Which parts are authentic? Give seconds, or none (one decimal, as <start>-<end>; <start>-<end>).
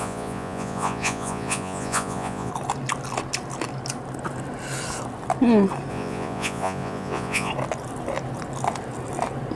2.5-5.9; 7.5-9.6